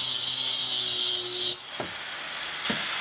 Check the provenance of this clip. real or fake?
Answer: real